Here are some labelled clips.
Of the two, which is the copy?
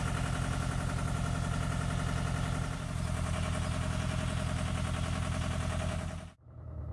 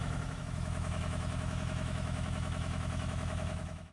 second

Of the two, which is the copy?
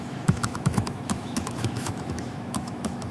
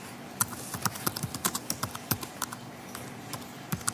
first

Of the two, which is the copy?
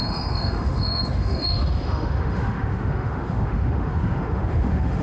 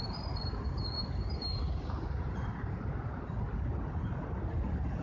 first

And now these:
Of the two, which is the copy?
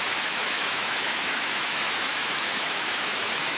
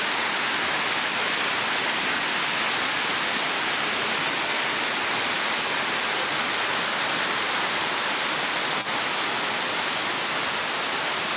first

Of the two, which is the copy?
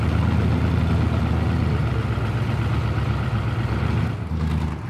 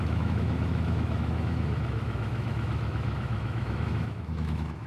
second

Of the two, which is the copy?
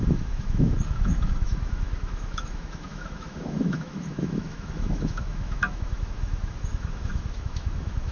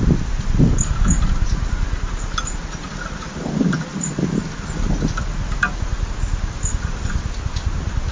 first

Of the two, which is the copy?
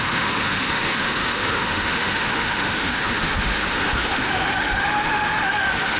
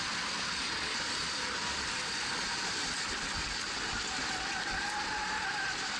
first